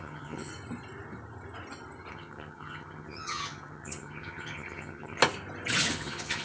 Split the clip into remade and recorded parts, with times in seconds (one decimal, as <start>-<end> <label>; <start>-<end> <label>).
0.0-0.5 remade; 0.5-2.1 recorded; 2.1-5.2 remade; 5.2-5.9 recorded; 5.9-6.4 remade